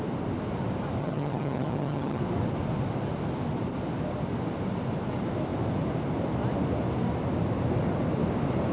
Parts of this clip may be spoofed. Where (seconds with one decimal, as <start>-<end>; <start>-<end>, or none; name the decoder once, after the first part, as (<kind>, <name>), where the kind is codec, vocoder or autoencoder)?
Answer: 1.0-2.2 (vocoder, HiFi-GAN)